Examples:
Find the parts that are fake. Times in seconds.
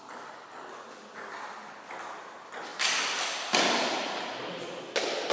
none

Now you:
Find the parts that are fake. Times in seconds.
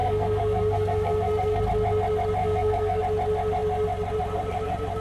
0.0-1.6 (codec, SNAC); 2.4-3.0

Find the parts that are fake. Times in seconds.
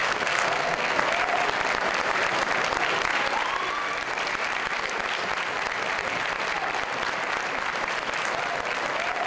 0.0-1.0 (codec, SNAC)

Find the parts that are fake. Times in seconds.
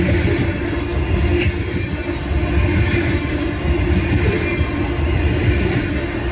none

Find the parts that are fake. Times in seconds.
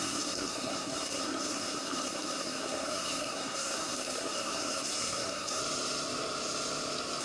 0.0-5.6 (codec, SNAC)